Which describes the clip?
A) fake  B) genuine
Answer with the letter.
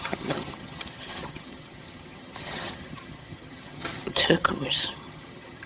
A